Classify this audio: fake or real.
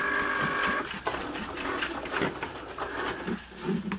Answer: real